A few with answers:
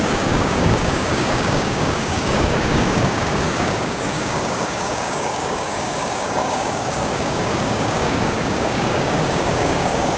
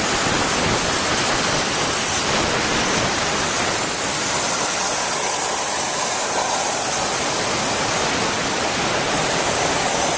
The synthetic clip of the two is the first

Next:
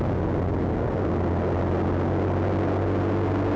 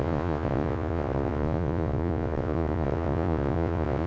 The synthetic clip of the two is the second